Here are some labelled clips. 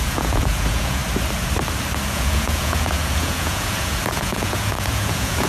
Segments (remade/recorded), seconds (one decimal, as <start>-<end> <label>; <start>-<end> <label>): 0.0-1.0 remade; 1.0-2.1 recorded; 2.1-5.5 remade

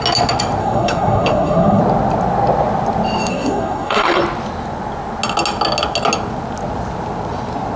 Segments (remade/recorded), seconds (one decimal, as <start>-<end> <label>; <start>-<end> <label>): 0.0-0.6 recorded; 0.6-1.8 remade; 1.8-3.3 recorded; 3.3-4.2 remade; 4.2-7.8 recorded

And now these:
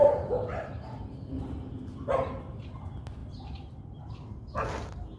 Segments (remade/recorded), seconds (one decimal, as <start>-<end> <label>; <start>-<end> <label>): 0.0-5.2 recorded